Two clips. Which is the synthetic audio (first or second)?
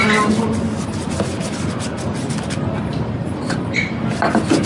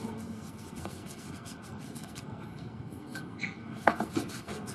second